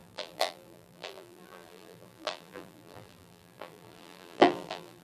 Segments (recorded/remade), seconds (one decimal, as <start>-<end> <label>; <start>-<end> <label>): 0.0-5.0 remade

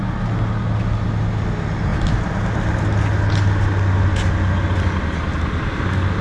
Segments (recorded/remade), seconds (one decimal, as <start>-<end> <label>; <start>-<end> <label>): 0.0-6.2 recorded

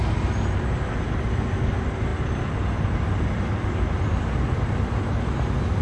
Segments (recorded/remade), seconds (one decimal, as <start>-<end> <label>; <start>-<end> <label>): 0.0-1.2 remade; 1.2-5.8 recorded

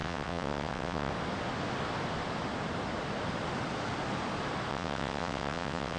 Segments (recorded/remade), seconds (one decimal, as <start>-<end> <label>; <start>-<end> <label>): 0.0-1.1 remade; 1.1-4.7 recorded; 4.7-6.0 remade

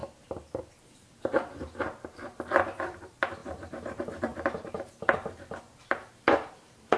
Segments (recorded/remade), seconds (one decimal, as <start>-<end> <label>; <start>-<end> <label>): 0.0-7.0 remade

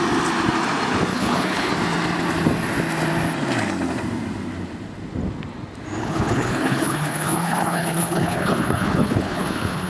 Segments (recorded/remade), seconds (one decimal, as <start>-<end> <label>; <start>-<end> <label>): 0.0-1.1 recorded; 1.1-1.7 remade; 1.7-6.0 recorded; 6.0-9.9 remade

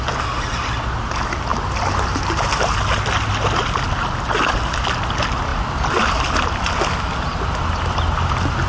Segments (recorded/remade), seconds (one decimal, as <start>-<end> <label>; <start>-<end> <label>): 0.0-8.7 recorded